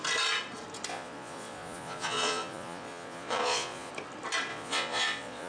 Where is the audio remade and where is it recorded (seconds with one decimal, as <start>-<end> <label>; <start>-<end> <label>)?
0.0-0.9 recorded; 0.9-3.9 remade; 3.9-4.5 recorded; 4.5-5.5 remade